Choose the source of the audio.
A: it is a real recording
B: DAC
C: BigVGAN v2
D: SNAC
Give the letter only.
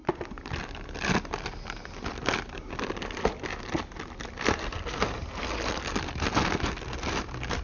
A